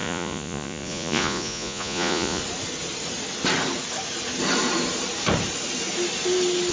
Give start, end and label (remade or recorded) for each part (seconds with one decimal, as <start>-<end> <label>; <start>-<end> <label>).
0.0-2.4 remade; 2.4-6.7 recorded

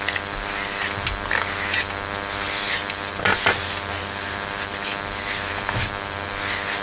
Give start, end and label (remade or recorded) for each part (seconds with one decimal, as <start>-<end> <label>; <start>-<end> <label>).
0.0-6.8 recorded

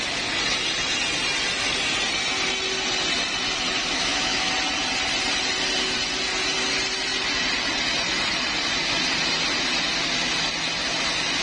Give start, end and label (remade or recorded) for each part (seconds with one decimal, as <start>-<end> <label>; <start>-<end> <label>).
0.0-3.8 recorded; 3.8-4.5 remade; 4.5-11.4 recorded

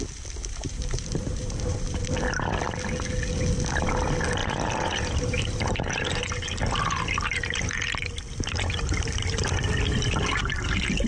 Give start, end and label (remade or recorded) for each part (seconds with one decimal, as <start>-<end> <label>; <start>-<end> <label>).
0.0-0.4 recorded; 0.4-2.0 remade; 2.0-4.4 recorded; 4.4-6.3 remade; 6.3-11.1 recorded